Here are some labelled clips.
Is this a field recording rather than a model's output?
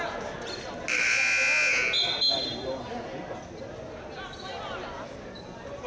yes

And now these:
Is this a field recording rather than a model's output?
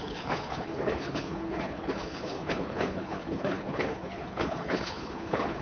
no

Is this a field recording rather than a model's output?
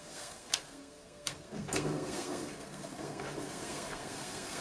no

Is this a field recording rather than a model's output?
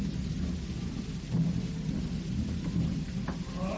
yes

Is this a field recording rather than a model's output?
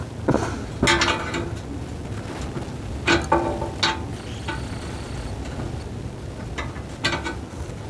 yes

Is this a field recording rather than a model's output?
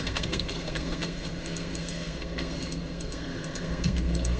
no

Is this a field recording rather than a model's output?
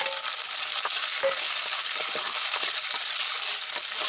yes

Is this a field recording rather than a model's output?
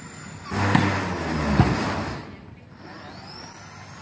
yes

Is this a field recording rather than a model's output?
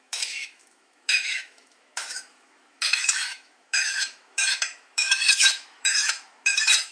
no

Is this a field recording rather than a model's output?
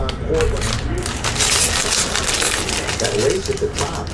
yes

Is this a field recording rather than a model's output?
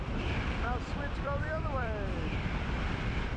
no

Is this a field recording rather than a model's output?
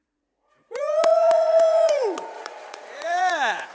no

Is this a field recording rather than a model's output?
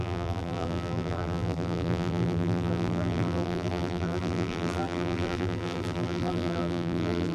no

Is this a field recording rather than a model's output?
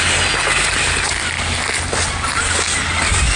yes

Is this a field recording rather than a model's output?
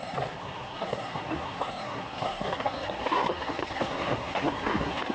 no